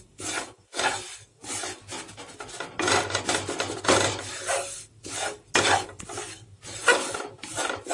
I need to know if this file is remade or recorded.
recorded